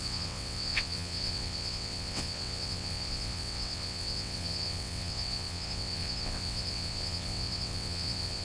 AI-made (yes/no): yes